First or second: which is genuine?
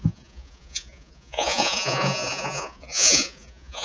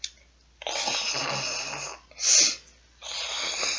second